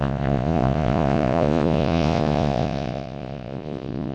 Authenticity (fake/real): fake